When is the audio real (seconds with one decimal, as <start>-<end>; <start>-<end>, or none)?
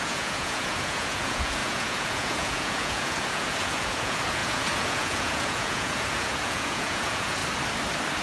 7.4-8.2